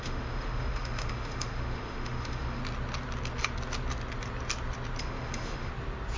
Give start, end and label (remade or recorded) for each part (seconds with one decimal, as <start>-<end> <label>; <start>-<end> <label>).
0.0-2.6 remade; 2.6-5.0 recorded; 5.0-5.7 remade; 5.7-6.2 recorded